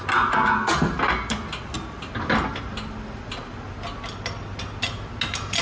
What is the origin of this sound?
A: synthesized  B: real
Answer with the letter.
B